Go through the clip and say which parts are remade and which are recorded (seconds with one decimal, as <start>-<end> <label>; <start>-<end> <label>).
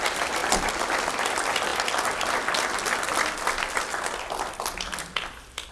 0.0-5.7 recorded